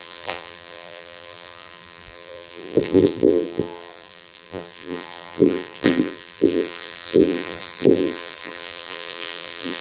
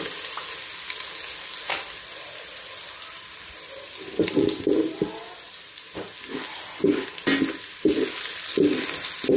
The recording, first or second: second